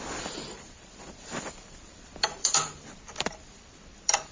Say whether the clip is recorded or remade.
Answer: remade